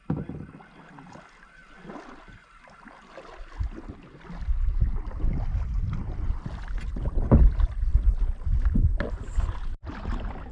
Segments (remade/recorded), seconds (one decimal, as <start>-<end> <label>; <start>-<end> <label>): 0.0-10.5 recorded